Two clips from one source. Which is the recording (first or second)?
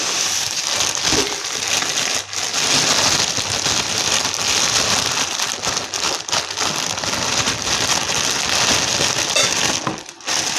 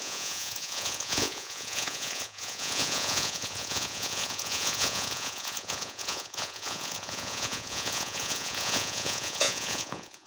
first